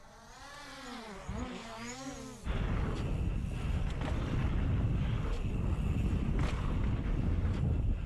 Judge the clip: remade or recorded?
recorded